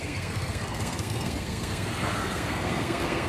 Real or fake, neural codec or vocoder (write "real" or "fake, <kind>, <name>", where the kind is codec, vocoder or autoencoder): fake, codec, SNAC